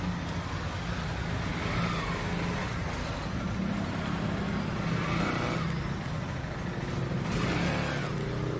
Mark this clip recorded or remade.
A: recorded